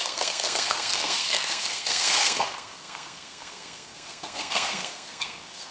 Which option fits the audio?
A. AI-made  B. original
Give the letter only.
A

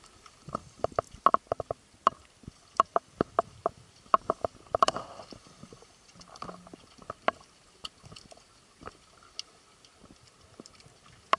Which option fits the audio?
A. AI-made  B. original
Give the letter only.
B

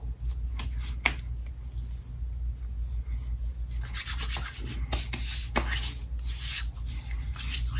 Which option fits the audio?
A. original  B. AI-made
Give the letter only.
A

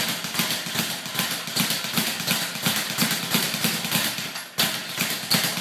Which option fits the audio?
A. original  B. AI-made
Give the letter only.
A